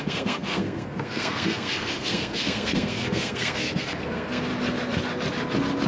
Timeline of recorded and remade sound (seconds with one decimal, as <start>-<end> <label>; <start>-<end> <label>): 0.0-4.5 remade; 4.5-5.9 recorded

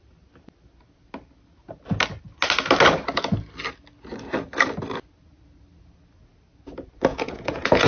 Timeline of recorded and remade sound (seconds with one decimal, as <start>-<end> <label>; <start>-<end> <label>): 0.0-7.1 recorded; 7.1-7.9 remade

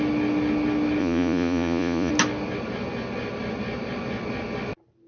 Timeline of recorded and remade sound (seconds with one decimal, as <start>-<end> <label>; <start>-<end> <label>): 0.0-1.0 recorded; 1.0-2.1 remade; 2.1-5.1 recorded

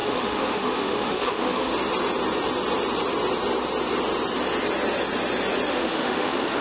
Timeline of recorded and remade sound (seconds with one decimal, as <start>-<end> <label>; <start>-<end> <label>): 0.0-1.7 remade; 1.7-5.7 recorded; 5.7-6.6 remade